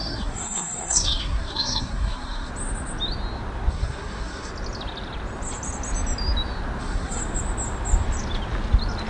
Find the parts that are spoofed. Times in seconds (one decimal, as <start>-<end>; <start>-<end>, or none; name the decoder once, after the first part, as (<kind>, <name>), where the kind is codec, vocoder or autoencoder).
0.0-2.5 (codec, SNAC); 3.7-4.5; 6.8-7.2